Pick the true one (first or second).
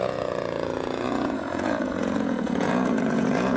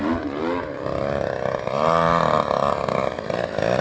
second